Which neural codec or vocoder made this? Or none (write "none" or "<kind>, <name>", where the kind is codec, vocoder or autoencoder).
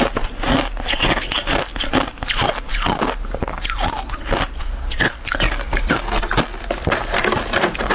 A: none